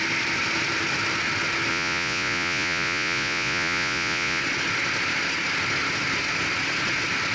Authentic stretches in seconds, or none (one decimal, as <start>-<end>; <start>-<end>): 0.0-1.7; 4.4-7.3